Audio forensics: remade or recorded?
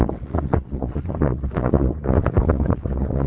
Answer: remade